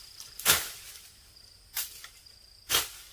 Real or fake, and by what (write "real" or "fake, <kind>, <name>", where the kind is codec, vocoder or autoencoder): real